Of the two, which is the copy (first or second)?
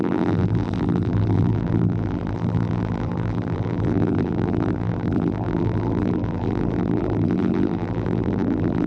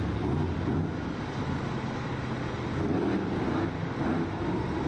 first